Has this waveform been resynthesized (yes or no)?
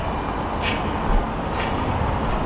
no